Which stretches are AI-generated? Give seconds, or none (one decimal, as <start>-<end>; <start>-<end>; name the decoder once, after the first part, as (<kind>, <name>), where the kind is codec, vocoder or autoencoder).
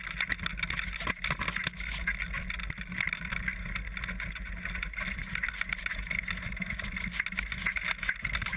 none